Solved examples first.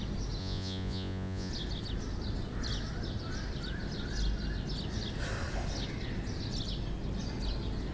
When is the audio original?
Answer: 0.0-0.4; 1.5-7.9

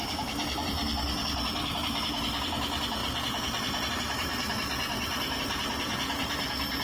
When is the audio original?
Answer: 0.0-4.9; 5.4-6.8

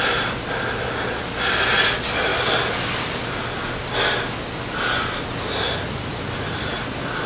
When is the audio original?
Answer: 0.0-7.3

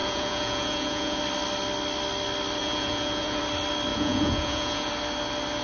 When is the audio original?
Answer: 1.2-2.6; 3.4-3.9; 4.9-5.6